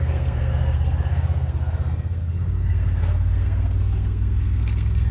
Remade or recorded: remade